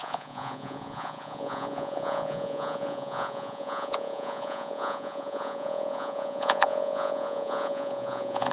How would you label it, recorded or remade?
remade